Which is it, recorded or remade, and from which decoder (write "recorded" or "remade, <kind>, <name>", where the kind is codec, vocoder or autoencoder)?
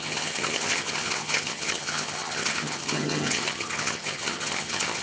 remade, vocoder, HiFi-GAN